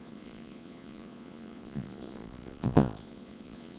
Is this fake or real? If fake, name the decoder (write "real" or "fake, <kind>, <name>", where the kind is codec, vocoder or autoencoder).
fake, vocoder, Vocos